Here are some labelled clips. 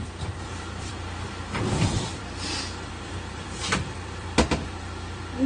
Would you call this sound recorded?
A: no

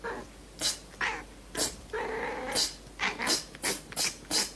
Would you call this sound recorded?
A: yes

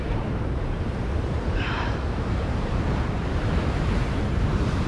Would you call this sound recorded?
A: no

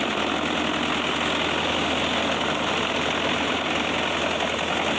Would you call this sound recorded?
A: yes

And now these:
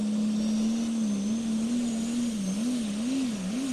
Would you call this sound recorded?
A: yes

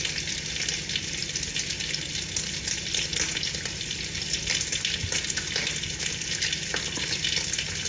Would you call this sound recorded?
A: yes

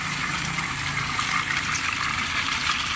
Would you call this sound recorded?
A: no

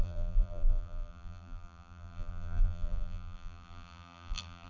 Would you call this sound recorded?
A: no